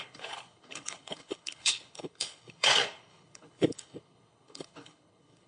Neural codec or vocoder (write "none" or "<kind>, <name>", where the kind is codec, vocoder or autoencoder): codec, HILCodec